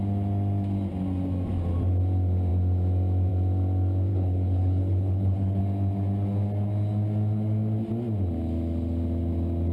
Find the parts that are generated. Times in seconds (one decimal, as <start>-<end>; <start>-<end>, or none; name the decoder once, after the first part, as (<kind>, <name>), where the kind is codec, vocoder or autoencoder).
4.1-5.6 (codec, HILCodec)